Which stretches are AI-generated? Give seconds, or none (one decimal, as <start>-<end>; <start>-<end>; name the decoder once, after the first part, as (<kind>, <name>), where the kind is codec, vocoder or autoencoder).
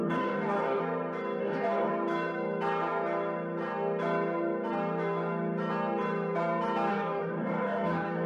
0.0-0.8 (codec, DAC); 1.4-1.9; 6.9-8.3